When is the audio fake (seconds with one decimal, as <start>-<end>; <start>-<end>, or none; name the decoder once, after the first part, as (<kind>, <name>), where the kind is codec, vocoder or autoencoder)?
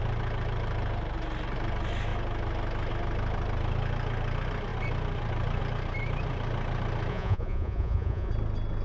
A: 7.1-8.3 (vocoder, Vocos)